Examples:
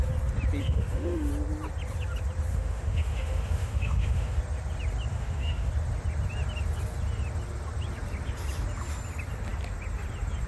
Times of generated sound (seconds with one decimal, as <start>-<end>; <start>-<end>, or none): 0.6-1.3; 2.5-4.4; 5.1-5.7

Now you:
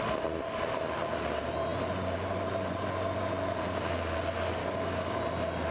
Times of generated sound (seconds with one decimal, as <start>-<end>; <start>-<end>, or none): 4.6-5.2

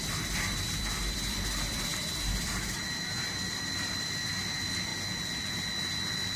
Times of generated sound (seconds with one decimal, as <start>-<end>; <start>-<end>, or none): 0.0-4.9